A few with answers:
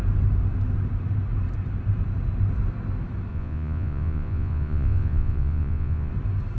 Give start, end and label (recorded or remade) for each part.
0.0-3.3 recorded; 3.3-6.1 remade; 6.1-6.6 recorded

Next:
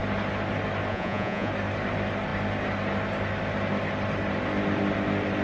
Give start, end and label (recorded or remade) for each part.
0.0-0.9 recorded; 0.9-1.5 remade; 1.5-5.4 recorded

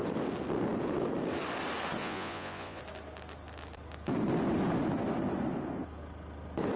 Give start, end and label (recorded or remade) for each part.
0.0-2.0 recorded; 2.0-2.8 remade; 2.8-6.8 recorded

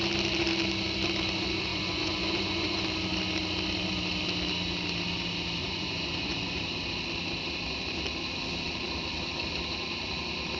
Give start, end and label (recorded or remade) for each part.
0.0-1.7 recorded; 1.7-2.8 remade; 2.8-5.6 recorded; 5.6-6.6 remade; 6.6-10.6 recorded

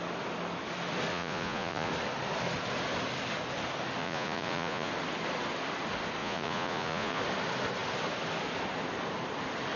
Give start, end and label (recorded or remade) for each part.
0.0-1.1 recorded; 1.1-1.9 remade; 1.9-4.0 recorded; 4.0-4.9 remade; 4.9-6.2 recorded; 6.2-7.2 remade; 7.2-9.8 recorded